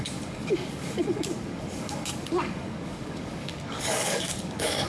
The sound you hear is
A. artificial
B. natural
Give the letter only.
A